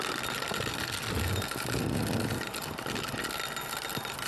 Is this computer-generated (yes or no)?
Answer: no